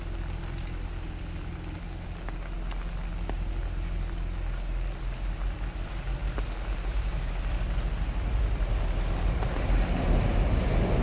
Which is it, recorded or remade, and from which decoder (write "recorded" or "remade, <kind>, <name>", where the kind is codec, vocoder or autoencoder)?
recorded